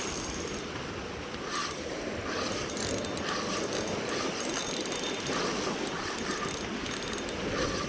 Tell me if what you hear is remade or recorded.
recorded